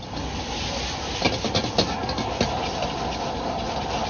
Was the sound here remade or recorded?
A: recorded